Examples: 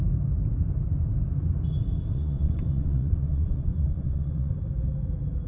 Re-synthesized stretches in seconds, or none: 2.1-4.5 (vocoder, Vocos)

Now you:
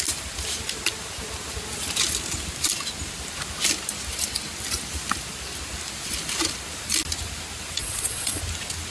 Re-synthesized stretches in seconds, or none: 7.8-8.4 (vocoder, Vocos)